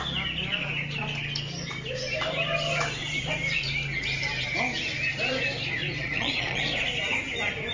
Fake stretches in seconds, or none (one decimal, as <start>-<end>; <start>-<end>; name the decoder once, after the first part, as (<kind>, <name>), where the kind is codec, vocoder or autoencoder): 6.0-6.6 (vocoder, Vocos)